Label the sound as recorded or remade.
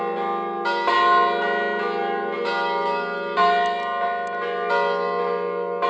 recorded